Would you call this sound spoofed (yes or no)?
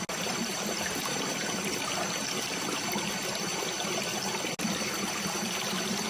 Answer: no